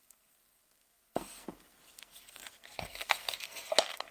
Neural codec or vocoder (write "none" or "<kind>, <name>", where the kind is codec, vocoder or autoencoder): codec, SNAC